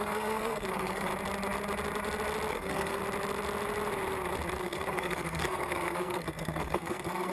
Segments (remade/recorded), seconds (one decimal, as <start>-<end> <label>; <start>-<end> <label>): 0.0-1.1 remade; 1.1-2.5 recorded; 2.5-3.0 remade; 3.0-4.6 recorded; 4.6-7.3 remade